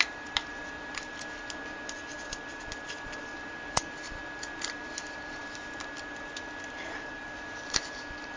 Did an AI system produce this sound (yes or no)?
yes